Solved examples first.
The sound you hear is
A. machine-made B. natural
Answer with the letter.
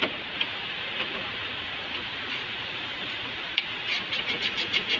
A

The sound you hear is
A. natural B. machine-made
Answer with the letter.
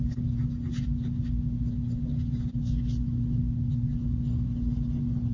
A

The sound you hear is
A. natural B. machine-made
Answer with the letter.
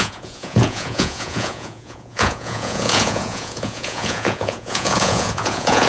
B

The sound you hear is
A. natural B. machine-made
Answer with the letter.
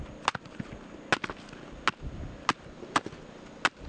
A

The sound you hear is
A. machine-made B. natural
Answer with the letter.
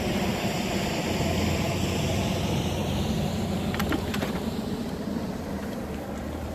A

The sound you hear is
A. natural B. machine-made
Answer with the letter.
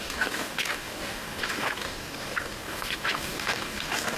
B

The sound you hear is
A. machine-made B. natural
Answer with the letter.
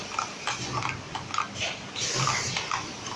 B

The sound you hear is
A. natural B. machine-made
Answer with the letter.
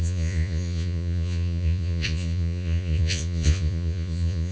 B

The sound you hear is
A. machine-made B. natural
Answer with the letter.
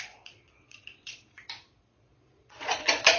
A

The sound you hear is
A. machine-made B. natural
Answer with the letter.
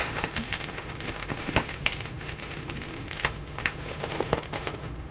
A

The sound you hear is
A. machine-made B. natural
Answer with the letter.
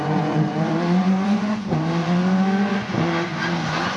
A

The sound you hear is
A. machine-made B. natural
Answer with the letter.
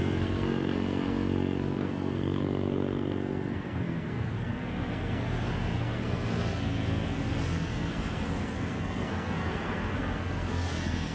A